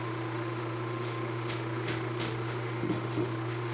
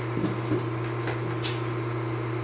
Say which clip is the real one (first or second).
second